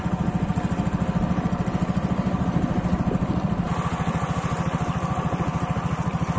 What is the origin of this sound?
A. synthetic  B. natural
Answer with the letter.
B